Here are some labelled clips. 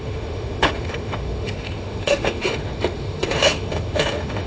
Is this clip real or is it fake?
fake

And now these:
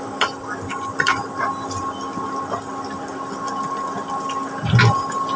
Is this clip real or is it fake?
real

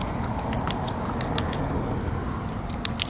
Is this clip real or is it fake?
real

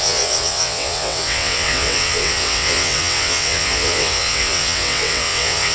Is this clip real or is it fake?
fake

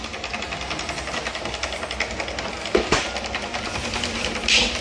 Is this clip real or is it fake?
real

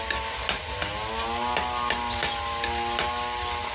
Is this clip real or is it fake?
real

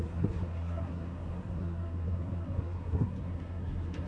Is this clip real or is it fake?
fake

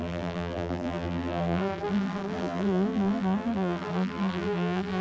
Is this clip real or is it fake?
fake